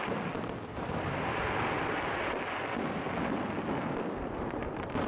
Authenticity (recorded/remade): recorded